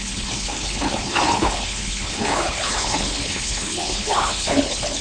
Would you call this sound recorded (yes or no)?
no